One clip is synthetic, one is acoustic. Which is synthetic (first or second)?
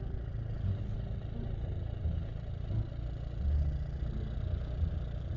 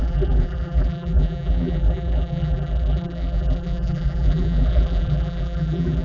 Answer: second